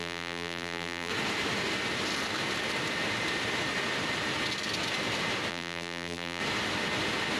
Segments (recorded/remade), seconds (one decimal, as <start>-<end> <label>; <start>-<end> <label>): 0.0-1.1 remade; 1.1-5.5 recorded; 5.5-6.4 remade; 6.4-7.4 recorded